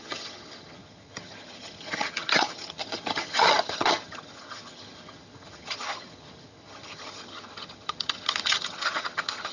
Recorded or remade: remade